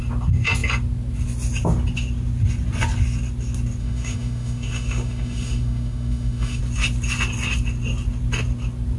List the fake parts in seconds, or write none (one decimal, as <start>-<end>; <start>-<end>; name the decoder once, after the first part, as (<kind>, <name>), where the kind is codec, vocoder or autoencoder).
3.8-6.6 (autoencoder, DAC-VAE)